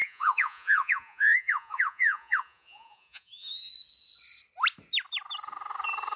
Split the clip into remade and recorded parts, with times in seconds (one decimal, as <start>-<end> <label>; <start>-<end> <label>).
0.0-3.7 remade; 3.7-6.2 recorded